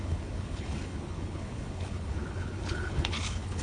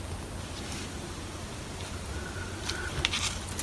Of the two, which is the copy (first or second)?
first